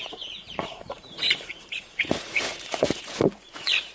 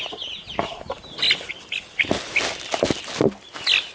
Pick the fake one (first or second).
first